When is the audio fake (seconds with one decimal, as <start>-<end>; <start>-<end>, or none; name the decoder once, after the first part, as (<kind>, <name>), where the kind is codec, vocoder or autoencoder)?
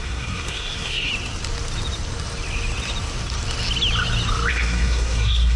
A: 0.0-1.1 (codec, SNAC); 4.5-5.6